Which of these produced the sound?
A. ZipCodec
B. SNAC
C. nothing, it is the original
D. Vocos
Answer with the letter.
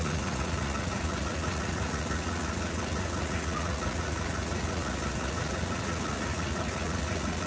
D